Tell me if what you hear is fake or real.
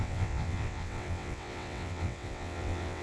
fake